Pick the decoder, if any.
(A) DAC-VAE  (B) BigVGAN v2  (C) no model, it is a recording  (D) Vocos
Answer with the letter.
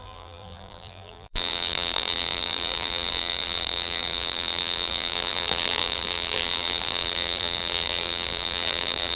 B